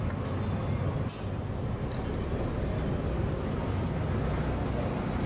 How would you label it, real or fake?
real